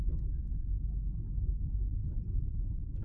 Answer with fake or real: real